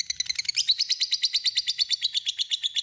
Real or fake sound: real